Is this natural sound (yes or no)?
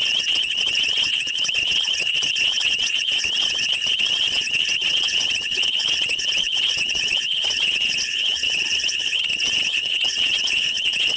no